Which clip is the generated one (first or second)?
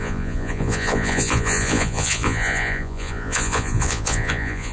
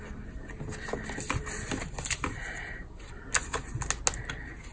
first